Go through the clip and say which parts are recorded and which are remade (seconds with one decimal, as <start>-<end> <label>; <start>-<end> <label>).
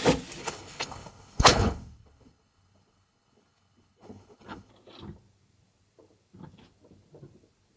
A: 0.0-0.4 recorded; 0.4-4.7 remade; 4.7-7.8 recorded